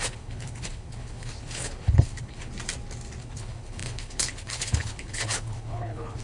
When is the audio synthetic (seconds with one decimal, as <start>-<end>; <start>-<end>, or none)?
0.0-2.5; 3.2-6.2